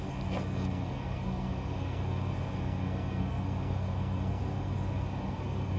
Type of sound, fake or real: fake